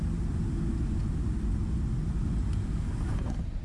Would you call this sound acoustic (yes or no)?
yes